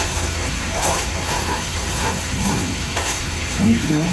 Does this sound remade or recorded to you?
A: remade